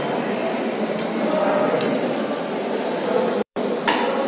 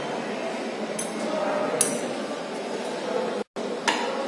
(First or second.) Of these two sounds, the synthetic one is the first